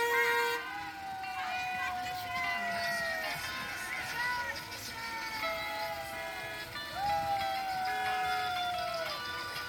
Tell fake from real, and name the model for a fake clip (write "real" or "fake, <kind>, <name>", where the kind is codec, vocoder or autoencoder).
real